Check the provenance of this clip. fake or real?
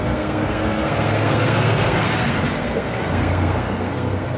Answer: fake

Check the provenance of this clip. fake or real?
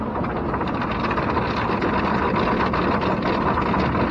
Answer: real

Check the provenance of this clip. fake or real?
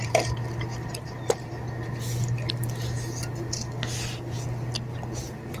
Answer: real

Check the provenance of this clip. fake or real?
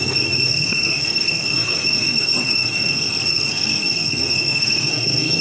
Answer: fake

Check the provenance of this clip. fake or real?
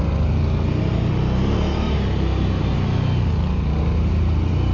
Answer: real